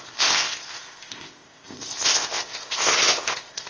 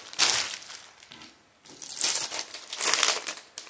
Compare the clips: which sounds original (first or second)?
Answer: second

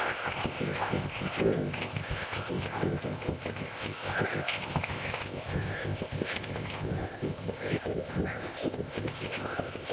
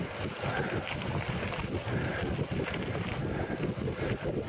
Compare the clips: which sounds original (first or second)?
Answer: second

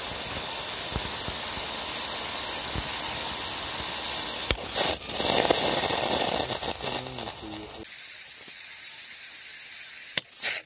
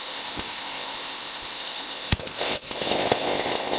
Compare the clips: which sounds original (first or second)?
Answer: first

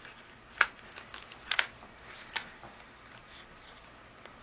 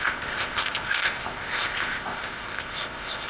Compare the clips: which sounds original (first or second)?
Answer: first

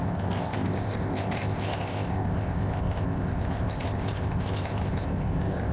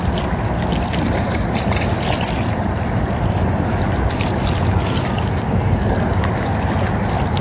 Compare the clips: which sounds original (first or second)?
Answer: second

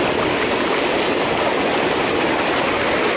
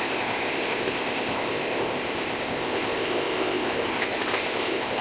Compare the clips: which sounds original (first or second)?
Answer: first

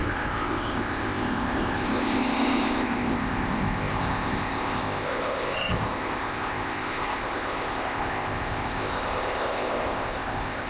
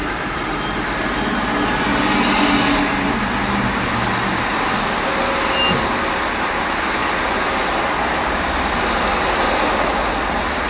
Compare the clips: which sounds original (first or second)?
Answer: second